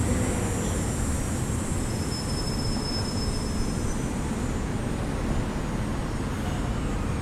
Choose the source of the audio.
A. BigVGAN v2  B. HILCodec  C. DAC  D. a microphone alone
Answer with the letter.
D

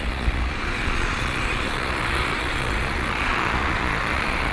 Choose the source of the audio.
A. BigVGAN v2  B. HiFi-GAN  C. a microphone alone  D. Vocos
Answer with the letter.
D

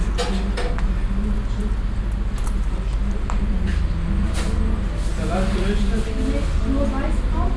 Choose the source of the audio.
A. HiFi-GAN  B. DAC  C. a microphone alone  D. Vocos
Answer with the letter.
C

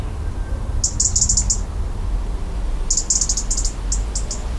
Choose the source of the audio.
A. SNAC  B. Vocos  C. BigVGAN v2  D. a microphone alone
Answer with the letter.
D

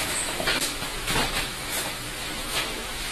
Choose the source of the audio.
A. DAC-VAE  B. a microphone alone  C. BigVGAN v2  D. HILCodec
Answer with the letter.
A